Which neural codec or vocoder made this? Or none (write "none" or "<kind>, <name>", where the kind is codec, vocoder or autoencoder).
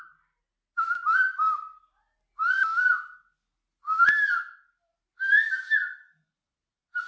none